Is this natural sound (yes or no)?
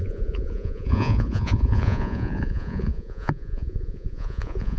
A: no